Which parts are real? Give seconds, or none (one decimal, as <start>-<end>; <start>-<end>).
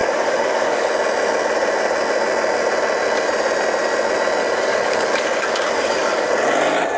0.9-4.4; 6.3-7.0